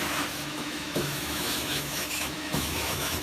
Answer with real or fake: fake